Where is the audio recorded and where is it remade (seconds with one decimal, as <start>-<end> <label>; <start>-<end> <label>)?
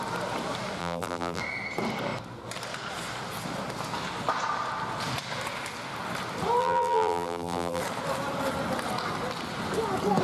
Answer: 0.0-0.8 recorded; 0.8-1.4 remade; 1.4-6.6 recorded; 6.6-7.8 remade; 7.8-10.2 recorded